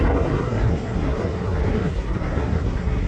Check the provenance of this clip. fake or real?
fake